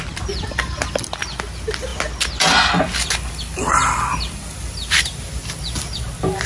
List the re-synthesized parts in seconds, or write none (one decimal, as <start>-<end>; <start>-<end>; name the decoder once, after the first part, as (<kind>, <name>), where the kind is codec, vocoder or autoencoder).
none